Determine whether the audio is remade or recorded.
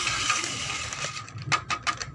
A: recorded